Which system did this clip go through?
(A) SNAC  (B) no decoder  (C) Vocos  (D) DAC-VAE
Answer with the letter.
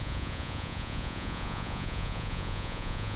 C